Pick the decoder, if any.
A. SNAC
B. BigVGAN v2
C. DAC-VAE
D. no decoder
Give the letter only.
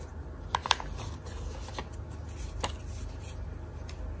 D